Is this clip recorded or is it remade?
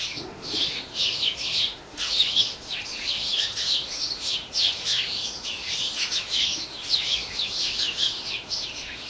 remade